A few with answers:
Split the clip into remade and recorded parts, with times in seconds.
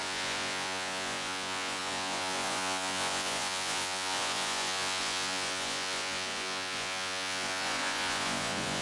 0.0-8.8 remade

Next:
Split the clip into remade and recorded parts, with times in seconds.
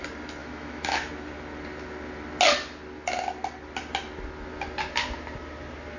0.0-0.4 recorded; 0.4-1.1 remade; 1.1-6.0 recorded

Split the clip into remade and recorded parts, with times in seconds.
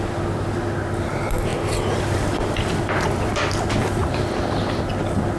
0.0-1.5 recorded; 1.5-3.4 remade; 3.4-5.4 recorded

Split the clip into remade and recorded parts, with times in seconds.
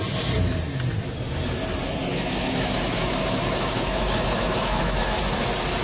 0.0-2.1 recorded; 2.1-5.2 remade; 5.2-5.8 recorded